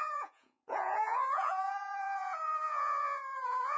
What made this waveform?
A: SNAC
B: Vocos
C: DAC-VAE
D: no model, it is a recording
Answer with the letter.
B